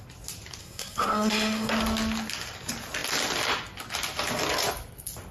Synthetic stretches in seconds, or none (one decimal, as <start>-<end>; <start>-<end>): 0.6-1.7